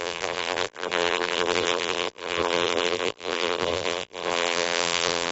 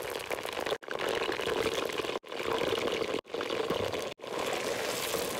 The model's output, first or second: first